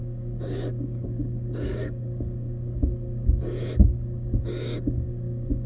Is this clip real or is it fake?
fake